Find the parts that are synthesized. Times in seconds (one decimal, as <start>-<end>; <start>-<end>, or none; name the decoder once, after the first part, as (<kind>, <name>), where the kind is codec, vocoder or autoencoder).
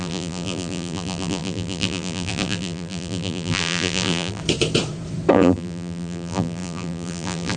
0.0-4.4 (vocoder, BigVGAN v2); 5.3-7.6